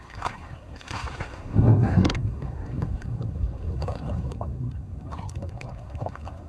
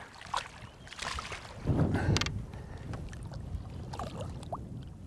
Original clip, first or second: second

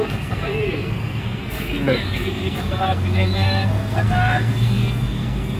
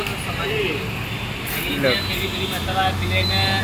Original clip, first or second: second